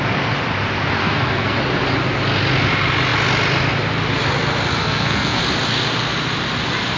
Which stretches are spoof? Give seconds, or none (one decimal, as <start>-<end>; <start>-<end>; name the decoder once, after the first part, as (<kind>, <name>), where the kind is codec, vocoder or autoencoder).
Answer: 1.0-1.6 (codec, SNAC); 4.8-5.4